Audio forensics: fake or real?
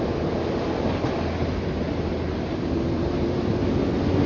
real